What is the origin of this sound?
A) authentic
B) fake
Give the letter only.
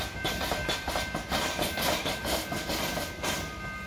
A